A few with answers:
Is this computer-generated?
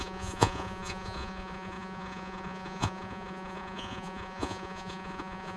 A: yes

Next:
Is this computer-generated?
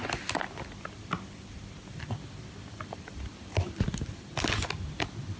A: no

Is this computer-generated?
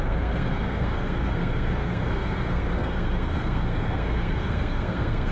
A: yes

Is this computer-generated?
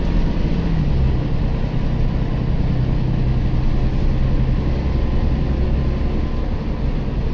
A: no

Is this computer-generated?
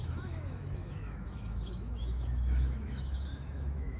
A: yes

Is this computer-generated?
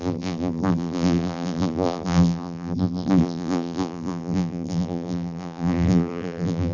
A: yes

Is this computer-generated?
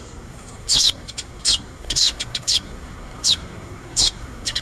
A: yes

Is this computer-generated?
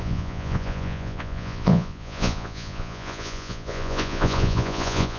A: yes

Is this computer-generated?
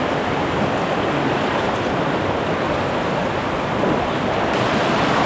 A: no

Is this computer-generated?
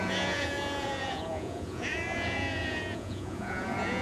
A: yes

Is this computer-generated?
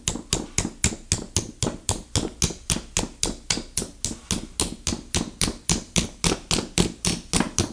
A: no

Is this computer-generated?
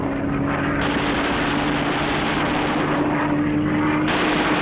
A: no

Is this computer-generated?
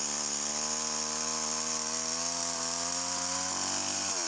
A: no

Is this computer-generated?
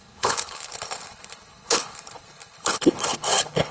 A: yes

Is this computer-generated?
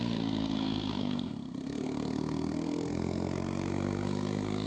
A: yes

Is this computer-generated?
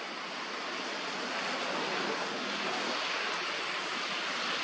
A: no